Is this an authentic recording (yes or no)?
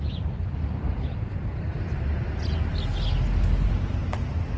yes